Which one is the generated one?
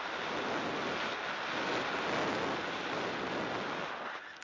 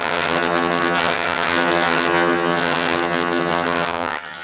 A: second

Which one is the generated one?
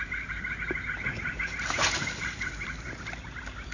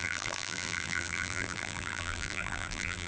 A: second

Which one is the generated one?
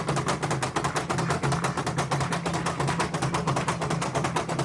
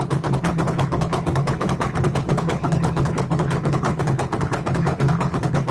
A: second